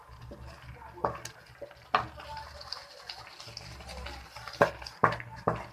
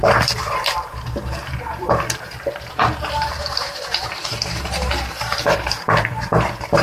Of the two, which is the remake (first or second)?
second